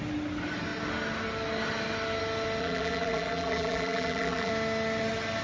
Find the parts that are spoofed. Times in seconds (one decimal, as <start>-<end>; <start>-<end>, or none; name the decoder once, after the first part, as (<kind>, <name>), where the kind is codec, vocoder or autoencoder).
2.6-4.5 (vocoder, BigVGAN v2)